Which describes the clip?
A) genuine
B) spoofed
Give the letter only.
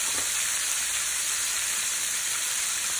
A